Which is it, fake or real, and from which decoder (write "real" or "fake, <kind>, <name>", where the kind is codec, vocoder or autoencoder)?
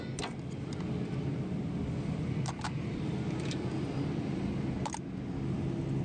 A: real